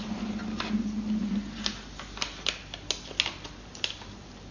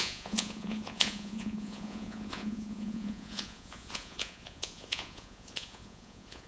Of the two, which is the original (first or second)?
first